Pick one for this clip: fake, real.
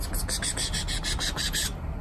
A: real